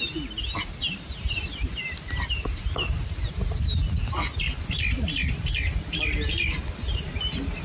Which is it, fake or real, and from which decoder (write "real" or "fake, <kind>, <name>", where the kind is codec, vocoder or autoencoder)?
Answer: real